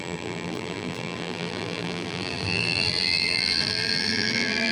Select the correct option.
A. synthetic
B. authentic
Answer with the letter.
A